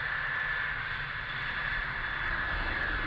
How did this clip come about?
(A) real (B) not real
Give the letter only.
A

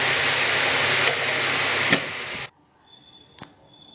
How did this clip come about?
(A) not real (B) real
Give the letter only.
B